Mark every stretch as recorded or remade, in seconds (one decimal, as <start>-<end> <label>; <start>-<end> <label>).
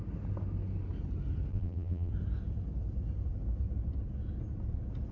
0.0-1.5 recorded; 1.5-2.1 remade; 2.1-5.1 recorded